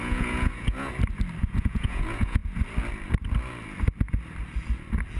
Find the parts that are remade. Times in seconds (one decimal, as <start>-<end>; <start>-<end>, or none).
0.0-0.9; 1.4-2.4